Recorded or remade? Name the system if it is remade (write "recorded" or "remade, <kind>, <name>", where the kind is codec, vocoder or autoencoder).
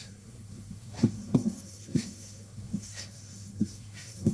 remade, codec, SNAC